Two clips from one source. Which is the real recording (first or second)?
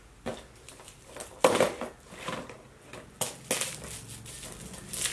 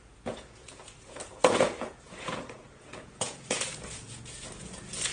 first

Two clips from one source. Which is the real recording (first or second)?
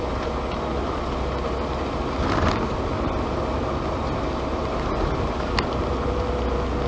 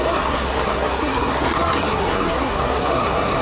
first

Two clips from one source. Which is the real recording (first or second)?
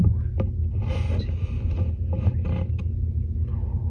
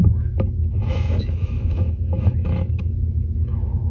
first